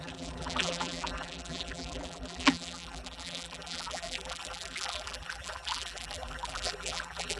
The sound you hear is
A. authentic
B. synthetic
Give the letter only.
B